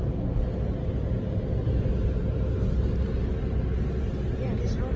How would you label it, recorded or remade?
recorded